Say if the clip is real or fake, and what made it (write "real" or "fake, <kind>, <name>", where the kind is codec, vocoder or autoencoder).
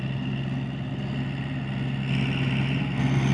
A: real